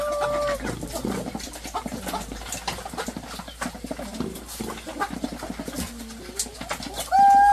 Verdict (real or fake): real